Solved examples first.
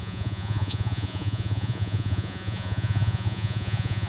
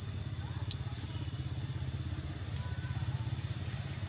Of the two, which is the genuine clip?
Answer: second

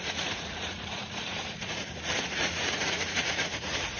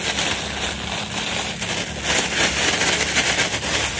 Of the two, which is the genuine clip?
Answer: second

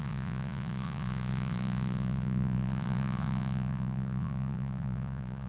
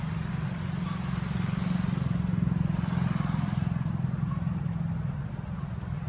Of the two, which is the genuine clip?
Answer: second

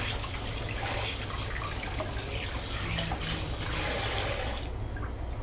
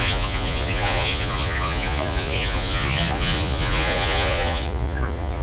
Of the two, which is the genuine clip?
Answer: first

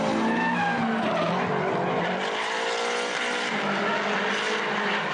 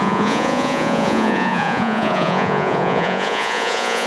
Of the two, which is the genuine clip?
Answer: first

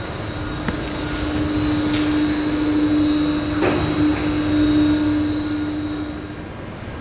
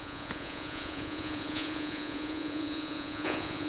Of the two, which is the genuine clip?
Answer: first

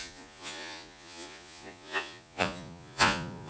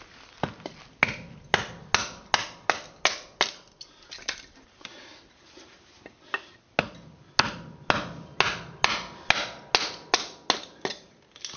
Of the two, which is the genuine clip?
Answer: second